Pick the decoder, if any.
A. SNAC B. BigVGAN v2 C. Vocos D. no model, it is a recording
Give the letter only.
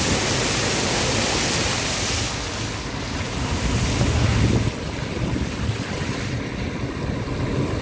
D